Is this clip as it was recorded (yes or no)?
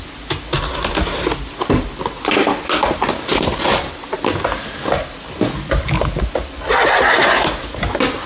yes